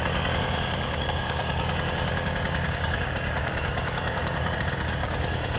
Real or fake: fake